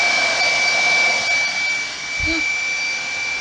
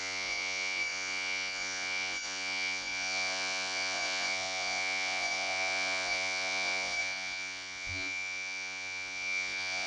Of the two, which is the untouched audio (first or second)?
first